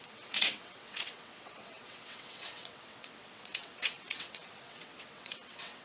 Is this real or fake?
fake